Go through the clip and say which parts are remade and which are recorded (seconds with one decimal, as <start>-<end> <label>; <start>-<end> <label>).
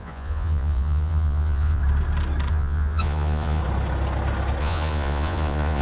0.0-1.8 remade; 1.8-2.5 recorded; 2.5-3.6 remade; 3.6-4.6 recorded; 4.6-5.8 remade